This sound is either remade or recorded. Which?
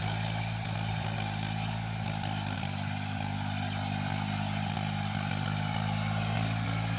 recorded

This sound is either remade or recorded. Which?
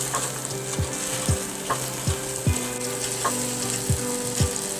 recorded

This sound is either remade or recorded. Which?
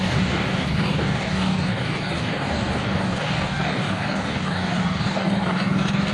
remade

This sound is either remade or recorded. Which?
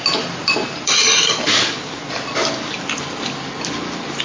recorded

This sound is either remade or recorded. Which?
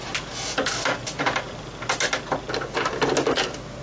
recorded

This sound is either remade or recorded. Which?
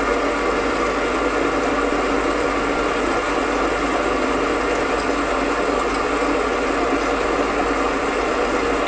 recorded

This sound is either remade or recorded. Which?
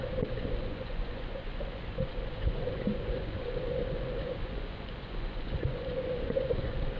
remade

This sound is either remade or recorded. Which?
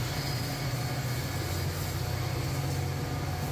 recorded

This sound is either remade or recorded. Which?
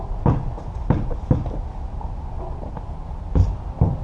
recorded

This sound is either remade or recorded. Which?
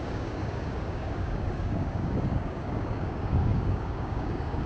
remade